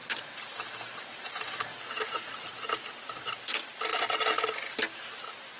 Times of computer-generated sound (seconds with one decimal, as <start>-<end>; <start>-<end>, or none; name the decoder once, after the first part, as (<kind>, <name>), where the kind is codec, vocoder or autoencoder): 0.0-3.4 (vocoder, BigVGAN v2)